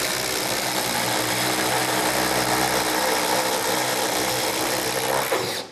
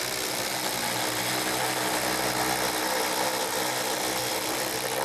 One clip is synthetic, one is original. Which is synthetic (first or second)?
first